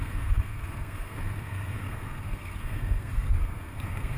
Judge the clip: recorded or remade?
remade